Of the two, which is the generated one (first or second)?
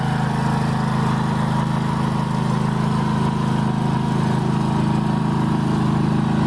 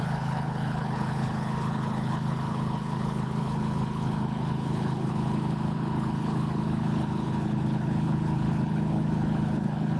second